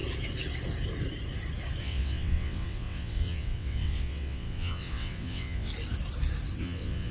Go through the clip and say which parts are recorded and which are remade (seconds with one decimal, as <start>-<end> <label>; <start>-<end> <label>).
0.0-1.8 recorded; 1.8-5.7 remade; 5.7-6.6 recorded; 6.6-7.1 remade